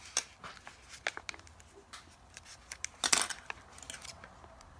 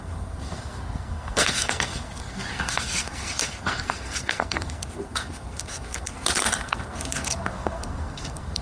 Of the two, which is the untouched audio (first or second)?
first